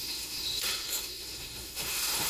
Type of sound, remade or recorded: remade